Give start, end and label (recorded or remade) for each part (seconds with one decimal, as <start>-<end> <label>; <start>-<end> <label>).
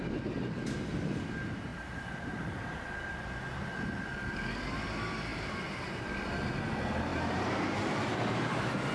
0.0-1.7 recorded; 1.7-2.3 remade; 2.3-5.3 recorded; 5.3-6.0 remade; 6.0-7.1 recorded; 7.1-8.9 remade